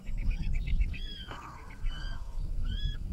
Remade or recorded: remade